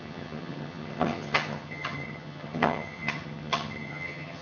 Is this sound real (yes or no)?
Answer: no